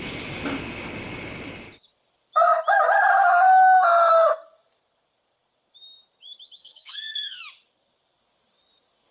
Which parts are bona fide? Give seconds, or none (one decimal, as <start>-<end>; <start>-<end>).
0.0-6.6; 7.4-9.1